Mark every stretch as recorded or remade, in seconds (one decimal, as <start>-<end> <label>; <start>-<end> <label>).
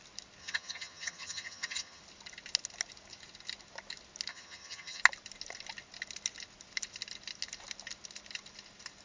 0.0-0.4 recorded; 0.4-2.0 remade; 2.0-4.3 recorded; 4.3-5.0 remade; 5.0-9.0 recorded